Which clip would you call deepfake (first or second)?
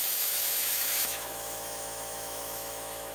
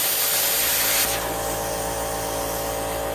first